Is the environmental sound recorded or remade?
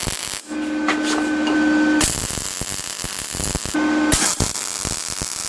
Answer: recorded